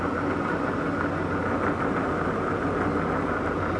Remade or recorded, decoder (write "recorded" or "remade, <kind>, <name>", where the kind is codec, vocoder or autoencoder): recorded